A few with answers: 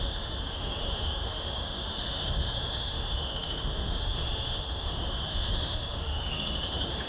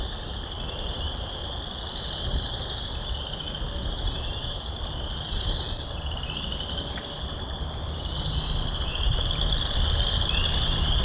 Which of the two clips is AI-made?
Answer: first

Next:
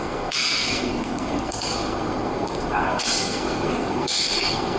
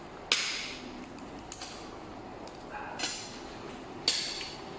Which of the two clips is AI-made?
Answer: first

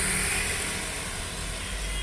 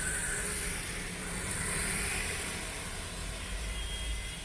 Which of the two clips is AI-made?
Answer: second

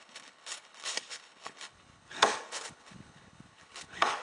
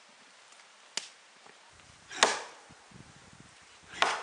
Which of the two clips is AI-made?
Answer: first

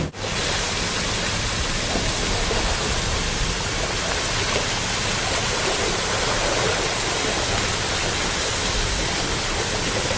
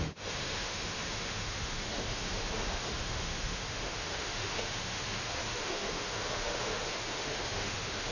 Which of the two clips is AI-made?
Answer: second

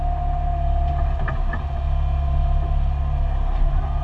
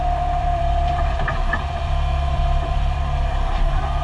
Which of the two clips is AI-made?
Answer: second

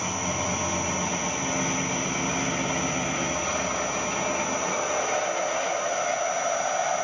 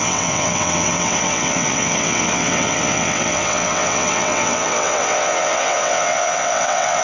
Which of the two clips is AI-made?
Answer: second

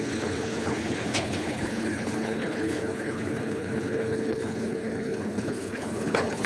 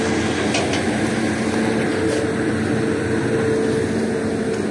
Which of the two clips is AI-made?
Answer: first